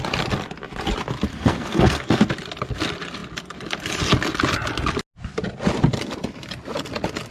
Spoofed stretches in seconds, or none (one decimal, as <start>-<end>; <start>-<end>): 1.3-2.3